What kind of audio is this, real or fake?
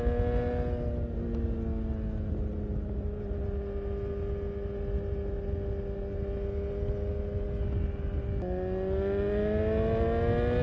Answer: real